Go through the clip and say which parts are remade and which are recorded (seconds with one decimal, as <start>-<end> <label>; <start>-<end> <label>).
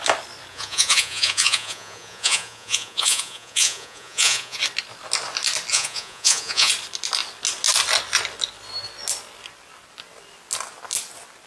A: 0.0-0.5 recorded; 0.5-4.6 remade; 4.6-5.7 recorded; 5.7-6.7 remade; 6.7-11.5 recorded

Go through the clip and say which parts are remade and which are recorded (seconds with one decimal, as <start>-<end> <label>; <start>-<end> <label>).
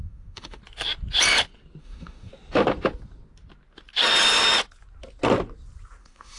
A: 0.0-0.6 remade; 0.6-1.8 recorded; 1.8-2.3 remade; 2.3-6.0 recorded; 6.0-6.4 remade